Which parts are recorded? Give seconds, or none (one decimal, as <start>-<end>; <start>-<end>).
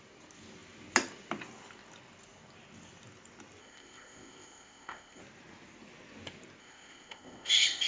0.0-3.6; 5.2-6.6